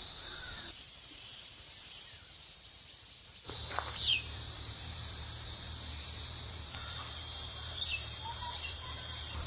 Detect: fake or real fake